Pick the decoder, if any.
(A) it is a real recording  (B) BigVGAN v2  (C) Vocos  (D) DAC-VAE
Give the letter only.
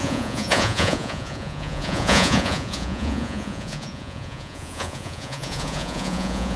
C